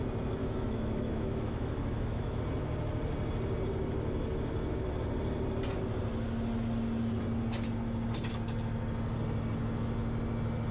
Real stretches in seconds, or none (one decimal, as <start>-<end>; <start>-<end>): 0.0-0.4; 2.4-10.7